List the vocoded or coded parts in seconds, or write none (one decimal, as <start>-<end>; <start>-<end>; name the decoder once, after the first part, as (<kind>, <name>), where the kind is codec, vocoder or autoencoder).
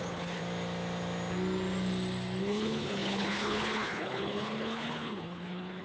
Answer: 0.0-0.4 (codec, HILCodec); 2.4-5.8